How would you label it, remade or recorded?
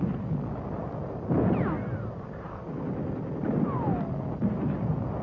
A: recorded